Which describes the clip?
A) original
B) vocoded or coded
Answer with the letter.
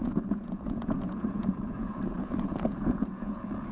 B